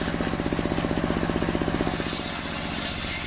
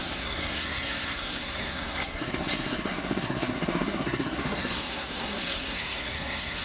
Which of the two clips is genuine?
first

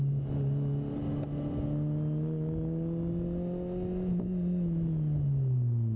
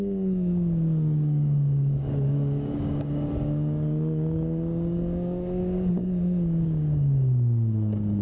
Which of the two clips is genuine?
first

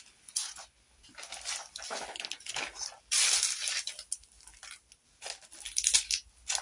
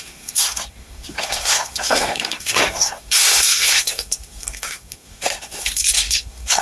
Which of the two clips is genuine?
first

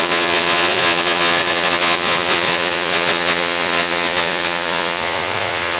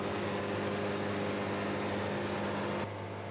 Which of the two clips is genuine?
second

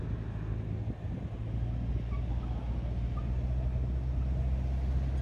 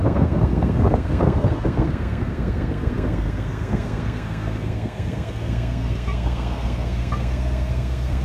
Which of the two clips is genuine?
first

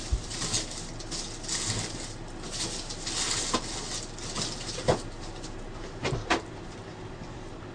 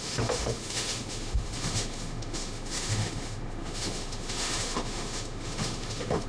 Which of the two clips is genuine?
first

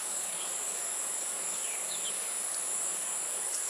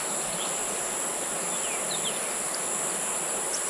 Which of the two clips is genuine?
second